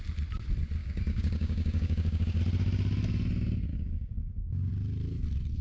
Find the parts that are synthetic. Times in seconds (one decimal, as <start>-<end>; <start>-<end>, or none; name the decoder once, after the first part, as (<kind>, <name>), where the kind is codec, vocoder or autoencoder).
0.8-2.4 (codec, DAC); 3.7-4.7